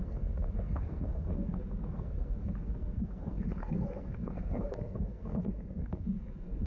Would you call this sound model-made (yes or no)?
yes